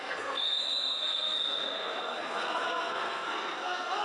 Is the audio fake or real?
fake